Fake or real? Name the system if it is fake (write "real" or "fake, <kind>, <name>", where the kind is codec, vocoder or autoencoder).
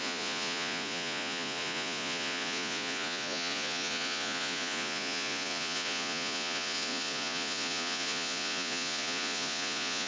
fake, vocoder, Vocos